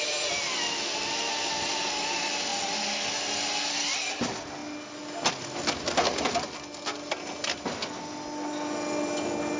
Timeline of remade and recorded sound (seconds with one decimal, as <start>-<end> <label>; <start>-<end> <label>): 0.0-9.6 recorded